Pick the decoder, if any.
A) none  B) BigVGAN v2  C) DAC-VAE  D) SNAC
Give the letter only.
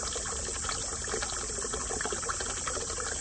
A